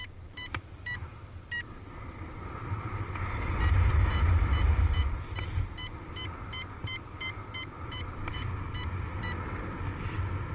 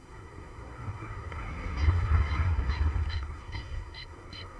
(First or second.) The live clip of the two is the first